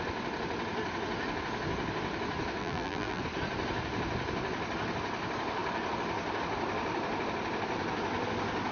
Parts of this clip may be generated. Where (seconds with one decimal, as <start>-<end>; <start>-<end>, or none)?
2.6-3.2